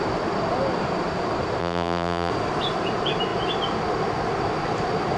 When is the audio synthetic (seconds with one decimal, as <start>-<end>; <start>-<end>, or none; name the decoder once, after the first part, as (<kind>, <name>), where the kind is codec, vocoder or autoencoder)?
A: 1.6-2.3 (vocoder, BigVGAN v2)